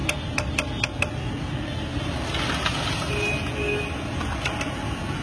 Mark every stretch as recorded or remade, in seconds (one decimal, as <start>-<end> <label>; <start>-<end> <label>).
0.0-5.2 recorded